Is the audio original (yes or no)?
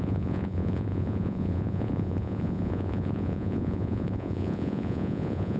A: no